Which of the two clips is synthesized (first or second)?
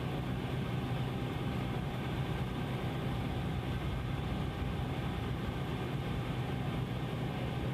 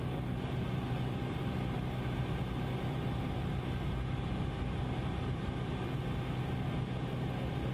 first